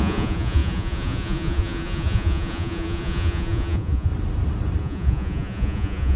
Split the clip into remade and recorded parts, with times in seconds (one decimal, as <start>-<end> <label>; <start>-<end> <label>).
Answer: 0.0-4.1 remade; 4.1-4.8 recorded; 4.8-6.2 remade